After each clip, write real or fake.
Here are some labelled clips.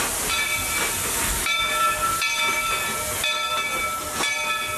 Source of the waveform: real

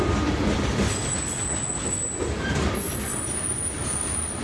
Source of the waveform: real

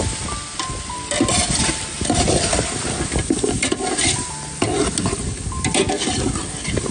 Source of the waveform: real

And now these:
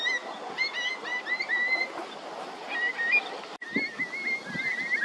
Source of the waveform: real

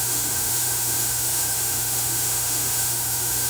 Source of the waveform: fake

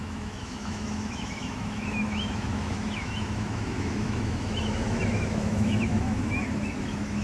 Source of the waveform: fake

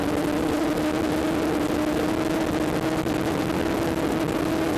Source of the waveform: real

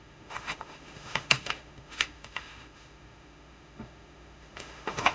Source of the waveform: fake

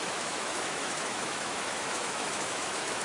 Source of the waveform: fake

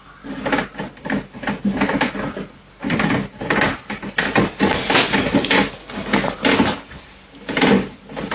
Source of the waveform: real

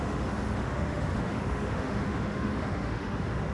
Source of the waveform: fake